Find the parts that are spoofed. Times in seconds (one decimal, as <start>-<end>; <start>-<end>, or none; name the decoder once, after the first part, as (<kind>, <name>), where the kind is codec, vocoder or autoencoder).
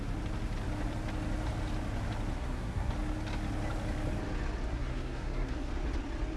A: 2.3-2.9 (codec, SNAC); 4.7-5.7